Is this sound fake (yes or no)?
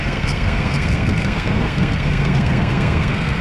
yes